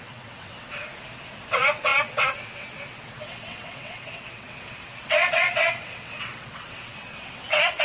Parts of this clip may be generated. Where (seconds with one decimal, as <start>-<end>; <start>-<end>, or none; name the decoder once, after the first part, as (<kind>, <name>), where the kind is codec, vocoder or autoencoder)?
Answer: 0.0-0.9 (vocoder, WaveNeXt); 1.5-7.8